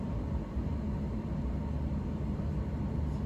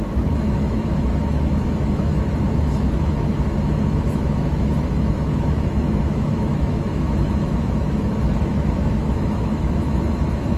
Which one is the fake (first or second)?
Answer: second